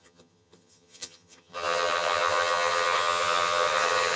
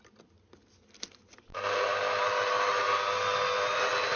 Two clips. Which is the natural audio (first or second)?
second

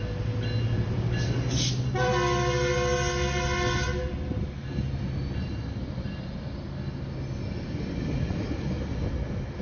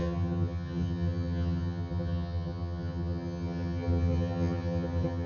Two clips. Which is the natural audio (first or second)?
first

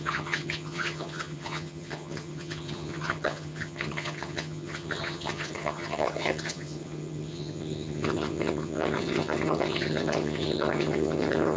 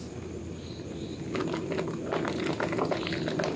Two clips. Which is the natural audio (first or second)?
second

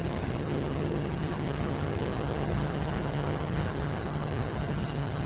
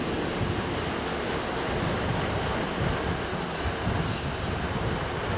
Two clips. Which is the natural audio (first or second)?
second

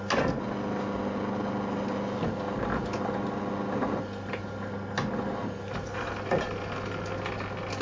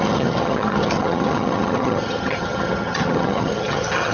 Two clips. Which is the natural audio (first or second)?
first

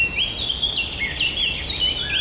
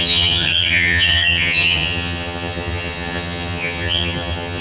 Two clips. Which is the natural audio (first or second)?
first